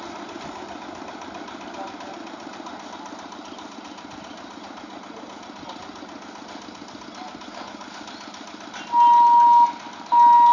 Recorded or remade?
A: recorded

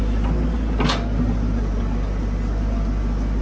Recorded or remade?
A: recorded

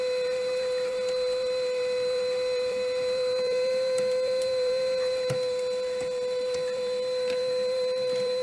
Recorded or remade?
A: remade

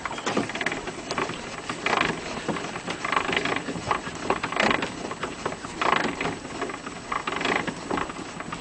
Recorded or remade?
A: recorded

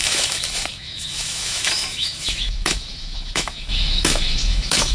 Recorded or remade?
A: remade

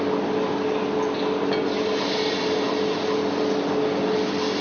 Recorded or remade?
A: recorded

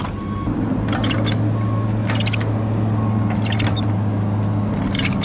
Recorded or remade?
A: recorded